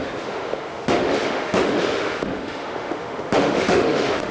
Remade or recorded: remade